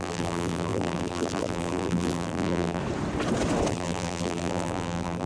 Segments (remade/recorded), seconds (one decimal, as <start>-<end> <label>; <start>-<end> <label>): 0.0-2.8 remade; 2.8-3.7 recorded; 3.7-5.3 remade